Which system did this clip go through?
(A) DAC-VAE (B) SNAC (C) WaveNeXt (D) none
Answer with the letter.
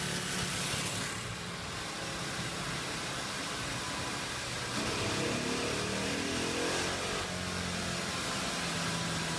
D